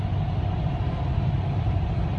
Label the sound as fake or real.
real